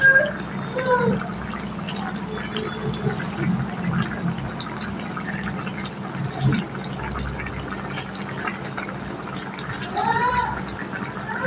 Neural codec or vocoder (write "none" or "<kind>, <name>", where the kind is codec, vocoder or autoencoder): none